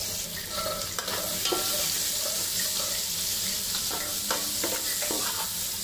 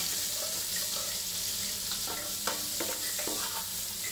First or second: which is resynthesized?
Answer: first